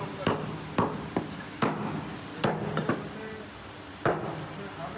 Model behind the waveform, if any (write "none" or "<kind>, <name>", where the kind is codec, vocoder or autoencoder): none